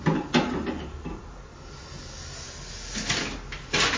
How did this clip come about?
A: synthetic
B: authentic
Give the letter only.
B